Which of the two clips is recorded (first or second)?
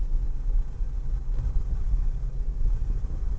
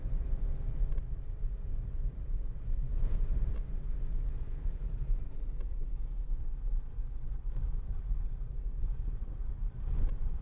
first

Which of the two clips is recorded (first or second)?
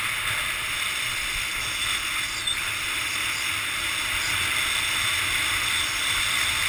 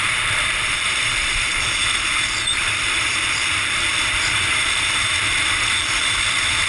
first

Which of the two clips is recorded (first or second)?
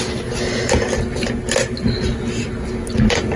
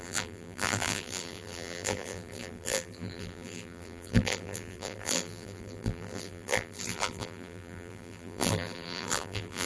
first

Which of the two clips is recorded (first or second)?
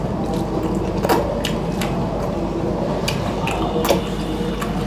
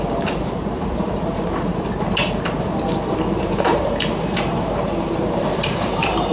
first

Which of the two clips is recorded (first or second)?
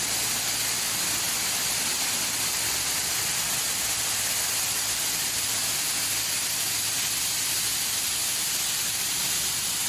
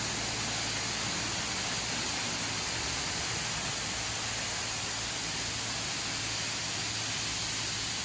second